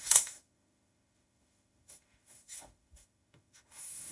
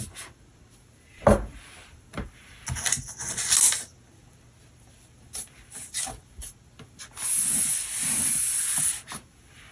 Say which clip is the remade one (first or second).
first